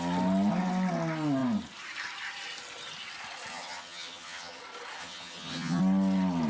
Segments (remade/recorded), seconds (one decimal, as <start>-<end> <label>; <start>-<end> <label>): 0.0-3.5 recorded; 3.5-4.6 remade; 4.6-5.0 recorded; 5.0-5.8 remade; 5.8-6.5 recorded